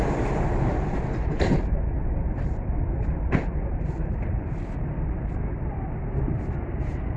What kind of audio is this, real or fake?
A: fake